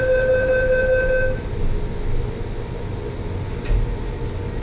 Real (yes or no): yes